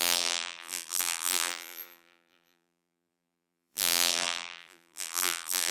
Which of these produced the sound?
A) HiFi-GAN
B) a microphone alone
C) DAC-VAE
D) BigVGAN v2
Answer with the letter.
D